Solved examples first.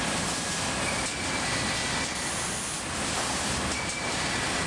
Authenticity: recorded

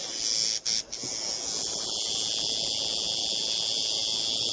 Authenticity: recorded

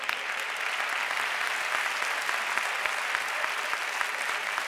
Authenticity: recorded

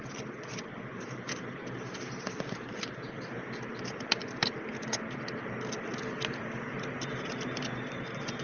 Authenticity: recorded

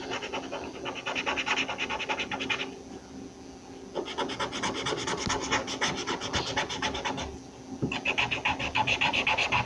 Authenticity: recorded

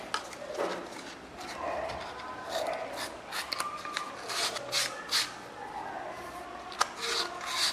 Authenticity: recorded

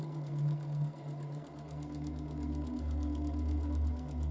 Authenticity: remade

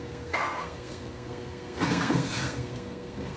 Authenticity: remade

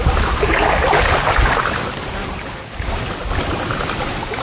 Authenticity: recorded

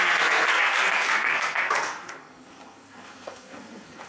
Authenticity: remade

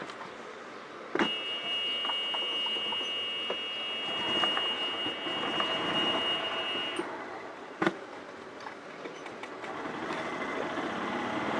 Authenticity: recorded